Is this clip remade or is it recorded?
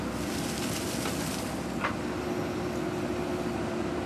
recorded